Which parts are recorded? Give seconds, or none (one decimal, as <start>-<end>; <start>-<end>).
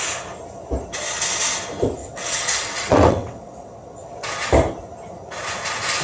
0.0-2.0; 3.9-6.0